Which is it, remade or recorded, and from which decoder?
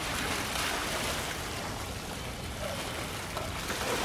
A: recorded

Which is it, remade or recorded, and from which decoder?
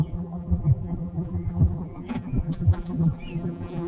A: remade, vocoder, BigVGAN v2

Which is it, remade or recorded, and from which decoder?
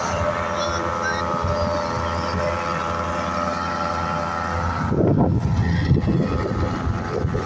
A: recorded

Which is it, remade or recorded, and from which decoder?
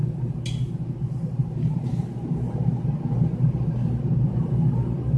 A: recorded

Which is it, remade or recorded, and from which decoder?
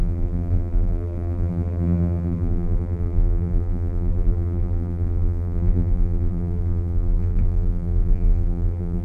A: remade, vocoder, BigVGAN v2